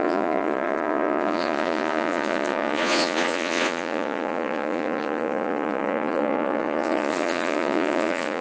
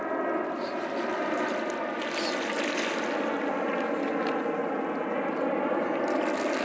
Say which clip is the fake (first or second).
first